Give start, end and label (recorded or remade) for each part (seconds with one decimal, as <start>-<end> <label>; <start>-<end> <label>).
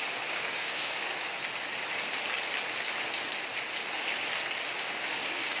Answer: 0.0-1.4 remade; 1.4-4.8 recorded; 4.8-5.6 remade